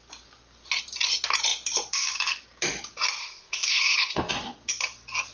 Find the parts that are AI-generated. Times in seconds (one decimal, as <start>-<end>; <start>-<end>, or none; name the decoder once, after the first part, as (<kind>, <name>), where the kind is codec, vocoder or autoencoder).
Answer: 3.2-4.3 (codec, ZipCodec)